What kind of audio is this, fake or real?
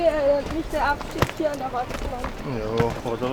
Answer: real